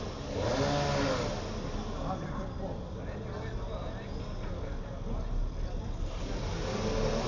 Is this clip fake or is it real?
real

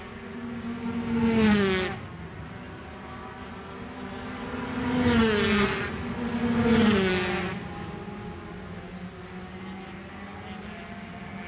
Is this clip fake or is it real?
real